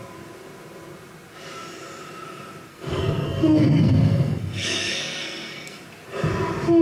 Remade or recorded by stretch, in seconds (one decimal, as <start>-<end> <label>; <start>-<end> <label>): 0.0-2.7 recorded; 2.7-5.8 remade; 5.8-6.8 recorded

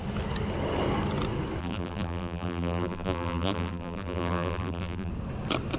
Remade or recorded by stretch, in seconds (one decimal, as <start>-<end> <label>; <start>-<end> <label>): 0.0-1.6 recorded; 1.6-5.1 remade; 5.1-5.8 recorded

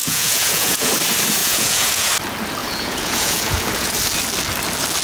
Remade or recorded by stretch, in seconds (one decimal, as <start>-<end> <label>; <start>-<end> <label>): 0.0-0.9 remade; 0.9-1.4 recorded; 1.4-2.1 remade; 2.1-2.6 recorded; 2.6-3.9 remade; 3.9-5.0 recorded

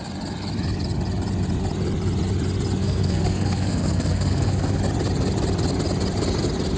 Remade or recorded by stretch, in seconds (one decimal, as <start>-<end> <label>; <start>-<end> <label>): 0.0-2.8 recorded; 2.8-4.8 remade; 4.8-6.8 recorded

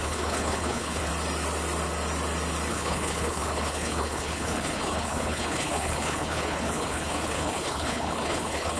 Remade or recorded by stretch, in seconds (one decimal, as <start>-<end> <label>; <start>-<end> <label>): 0.0-1.1 remade; 1.1-2.7 recorded; 2.7-8.8 remade

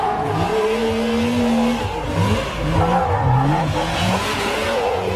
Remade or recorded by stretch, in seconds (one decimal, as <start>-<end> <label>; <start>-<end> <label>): 0.0-0.5 remade; 0.5-3.5 recorded; 3.5-5.2 remade